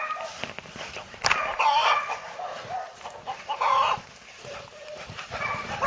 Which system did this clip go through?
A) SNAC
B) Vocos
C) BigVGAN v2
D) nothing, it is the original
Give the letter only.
C